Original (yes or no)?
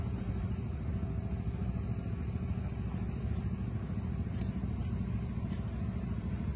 yes